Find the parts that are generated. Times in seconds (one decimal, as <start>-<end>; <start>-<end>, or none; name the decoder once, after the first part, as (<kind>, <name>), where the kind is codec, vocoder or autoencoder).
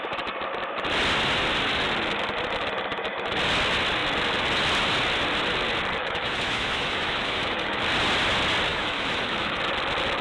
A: 6.0-7.8 (autoencoder, DAC-VAE); 8.7-9.6